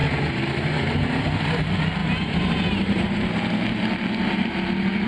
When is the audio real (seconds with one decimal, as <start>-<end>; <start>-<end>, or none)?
1.4-2.0; 3.3-5.1